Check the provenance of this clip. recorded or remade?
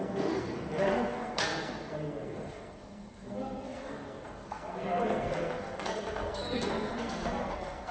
remade